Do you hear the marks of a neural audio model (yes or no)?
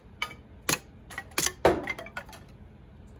no